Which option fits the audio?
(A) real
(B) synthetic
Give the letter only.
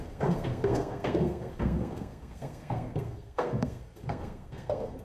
B